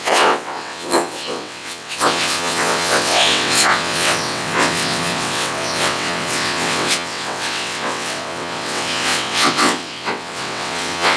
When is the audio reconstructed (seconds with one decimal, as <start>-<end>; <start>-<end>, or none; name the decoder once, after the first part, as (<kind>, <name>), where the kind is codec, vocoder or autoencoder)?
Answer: 0.0-11.2 (vocoder, WaveNeXt)